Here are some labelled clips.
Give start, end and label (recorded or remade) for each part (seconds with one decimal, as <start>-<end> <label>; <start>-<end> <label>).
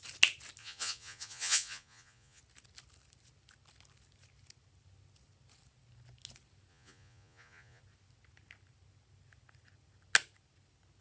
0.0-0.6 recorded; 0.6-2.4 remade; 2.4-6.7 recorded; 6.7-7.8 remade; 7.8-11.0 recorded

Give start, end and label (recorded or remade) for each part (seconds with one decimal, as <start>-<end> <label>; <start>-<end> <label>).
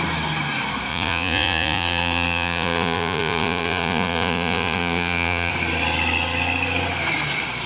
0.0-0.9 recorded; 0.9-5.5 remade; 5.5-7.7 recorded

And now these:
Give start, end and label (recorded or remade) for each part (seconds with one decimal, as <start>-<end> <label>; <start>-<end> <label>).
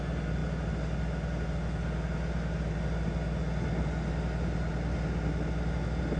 0.0-6.2 recorded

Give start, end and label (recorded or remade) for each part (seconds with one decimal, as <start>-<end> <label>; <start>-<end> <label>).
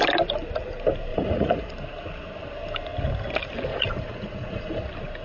0.0-1.1 recorded; 1.1-1.7 remade; 1.7-3.7 recorded; 3.7-4.8 remade; 4.8-5.2 recorded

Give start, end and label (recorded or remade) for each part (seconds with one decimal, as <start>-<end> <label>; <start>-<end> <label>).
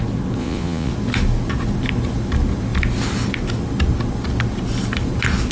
0.0-0.4 recorded; 0.4-0.9 remade; 0.9-5.5 recorded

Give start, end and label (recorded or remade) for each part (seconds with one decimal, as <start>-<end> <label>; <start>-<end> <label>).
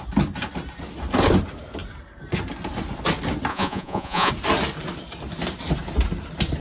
0.0-3.5 recorded; 3.5-4.3 remade; 4.3-6.6 recorded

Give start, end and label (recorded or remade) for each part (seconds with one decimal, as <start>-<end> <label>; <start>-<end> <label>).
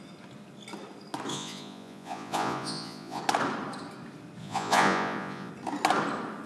0.0-1.3 recorded; 1.3-3.2 remade; 3.2-4.4 recorded; 4.4-5.5 remade; 5.5-6.5 recorded